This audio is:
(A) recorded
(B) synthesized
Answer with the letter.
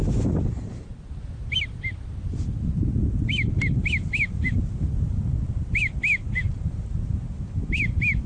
A